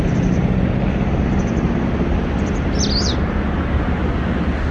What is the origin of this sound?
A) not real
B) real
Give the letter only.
B